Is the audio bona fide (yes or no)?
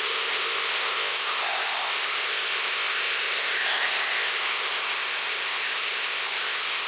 no